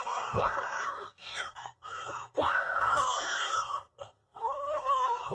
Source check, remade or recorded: remade